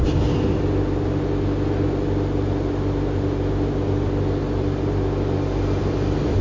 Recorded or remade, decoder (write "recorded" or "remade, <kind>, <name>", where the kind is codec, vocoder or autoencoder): recorded